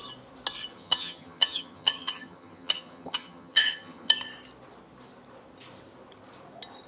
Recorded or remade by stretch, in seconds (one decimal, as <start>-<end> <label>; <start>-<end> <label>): 0.0-0.7 recorded; 0.7-4.1 remade; 4.1-6.9 recorded